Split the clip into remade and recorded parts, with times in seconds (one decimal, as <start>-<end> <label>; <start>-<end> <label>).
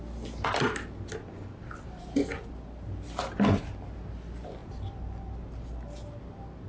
0.0-6.7 recorded